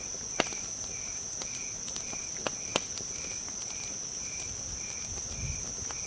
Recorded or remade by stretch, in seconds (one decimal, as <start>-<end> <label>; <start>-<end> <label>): 0.0-6.1 recorded